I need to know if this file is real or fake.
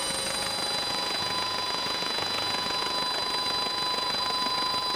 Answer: fake